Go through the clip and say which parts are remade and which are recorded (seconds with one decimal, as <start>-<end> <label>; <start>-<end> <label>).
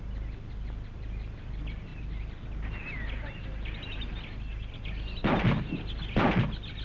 0.0-6.8 recorded